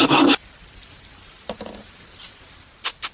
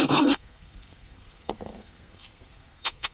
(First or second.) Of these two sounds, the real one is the first